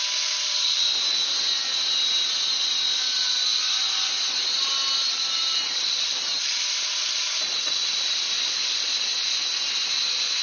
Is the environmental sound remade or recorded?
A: recorded